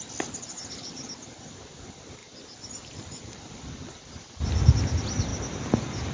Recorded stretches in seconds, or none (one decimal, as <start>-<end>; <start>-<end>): 0.0-6.1